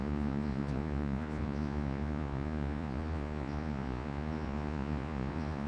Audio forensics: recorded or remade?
remade